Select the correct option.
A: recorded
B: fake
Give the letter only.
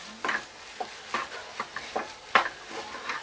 A